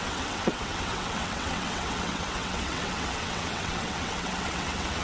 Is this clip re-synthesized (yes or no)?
yes